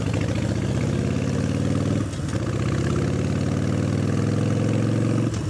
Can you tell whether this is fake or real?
real